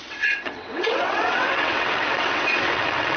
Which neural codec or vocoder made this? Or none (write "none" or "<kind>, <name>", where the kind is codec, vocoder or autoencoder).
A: vocoder, WaveNeXt